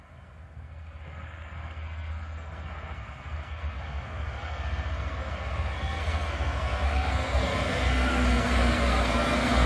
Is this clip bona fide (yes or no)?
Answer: no